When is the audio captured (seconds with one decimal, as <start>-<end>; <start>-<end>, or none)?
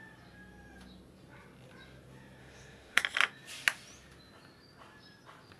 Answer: 0.0-2.4; 3.0-5.6